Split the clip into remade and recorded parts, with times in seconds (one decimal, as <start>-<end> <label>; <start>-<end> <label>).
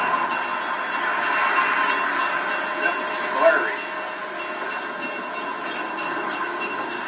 0.0-5.8 recorded; 5.8-7.1 remade